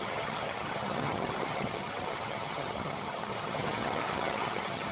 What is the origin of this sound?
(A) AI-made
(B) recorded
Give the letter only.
A